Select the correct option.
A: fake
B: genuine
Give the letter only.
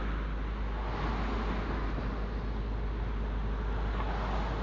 B